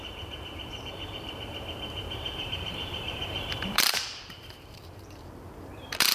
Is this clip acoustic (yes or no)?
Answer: no